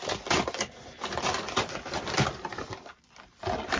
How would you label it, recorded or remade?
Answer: recorded